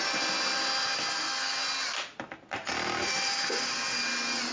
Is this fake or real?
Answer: real